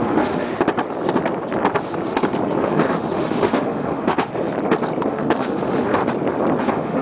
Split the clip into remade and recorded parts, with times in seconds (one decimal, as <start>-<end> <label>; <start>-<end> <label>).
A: 0.0-0.5 remade; 0.5-2.6 recorded; 2.6-4.3 remade; 4.3-5.1 recorded; 5.1-6.0 remade; 6.0-6.6 recorded; 6.6-7.0 remade